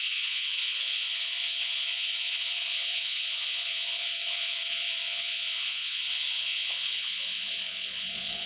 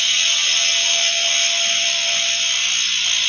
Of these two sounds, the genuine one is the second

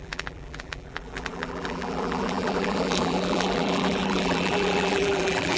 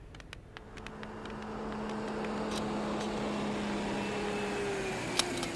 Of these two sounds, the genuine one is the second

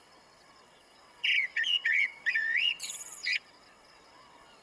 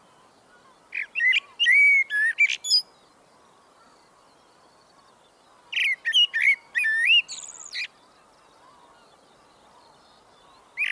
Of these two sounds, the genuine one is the second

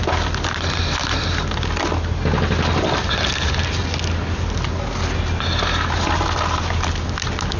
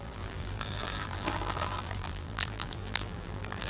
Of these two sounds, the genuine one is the first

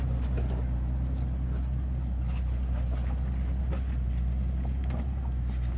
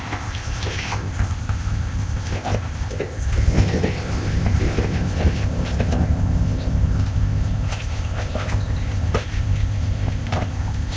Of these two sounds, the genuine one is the first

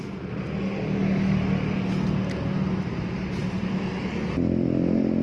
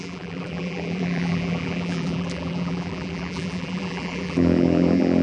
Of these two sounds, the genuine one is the first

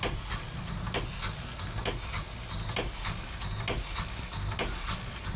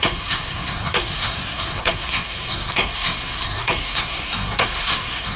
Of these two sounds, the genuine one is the first